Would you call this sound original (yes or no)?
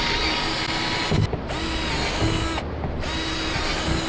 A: yes